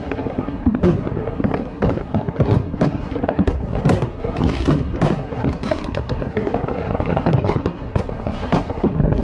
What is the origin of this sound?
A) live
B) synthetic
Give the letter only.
B